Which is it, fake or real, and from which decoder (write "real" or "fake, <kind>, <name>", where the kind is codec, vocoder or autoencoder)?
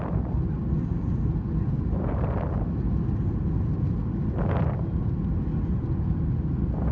real